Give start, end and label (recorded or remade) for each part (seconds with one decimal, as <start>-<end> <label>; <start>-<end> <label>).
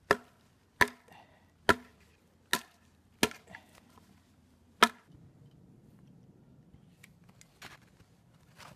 0.0-8.8 recorded